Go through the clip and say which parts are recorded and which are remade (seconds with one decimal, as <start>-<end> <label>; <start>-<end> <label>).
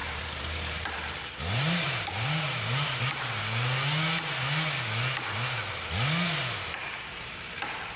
0.0-3.0 remade; 3.0-6.8 recorded; 6.8-7.3 remade; 7.3-8.0 recorded